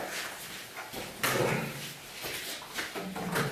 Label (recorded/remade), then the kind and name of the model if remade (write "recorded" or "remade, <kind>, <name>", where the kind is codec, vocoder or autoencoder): recorded